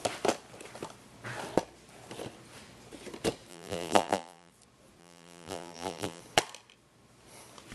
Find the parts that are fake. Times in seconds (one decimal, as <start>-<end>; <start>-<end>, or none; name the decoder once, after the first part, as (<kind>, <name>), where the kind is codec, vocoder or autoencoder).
3.5-4.5 (vocoder, BigVGAN v2); 5.0-6.2